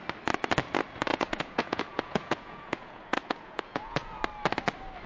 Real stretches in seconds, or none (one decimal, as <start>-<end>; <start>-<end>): 0.0-1.1; 4.2-5.1